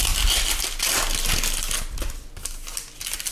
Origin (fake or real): real